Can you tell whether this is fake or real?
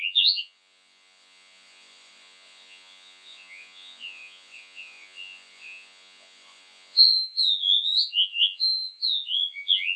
fake